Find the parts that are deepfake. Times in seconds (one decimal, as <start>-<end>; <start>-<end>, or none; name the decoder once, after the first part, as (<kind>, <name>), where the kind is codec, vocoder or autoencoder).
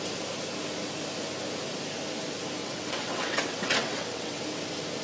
2.6-4.4 (vocoder, WaveNeXt)